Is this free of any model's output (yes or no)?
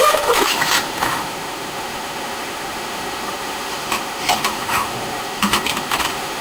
no